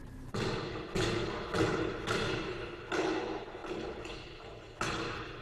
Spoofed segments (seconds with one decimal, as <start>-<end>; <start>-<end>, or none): none